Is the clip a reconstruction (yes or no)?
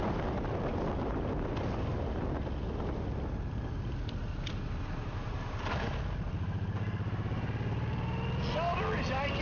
no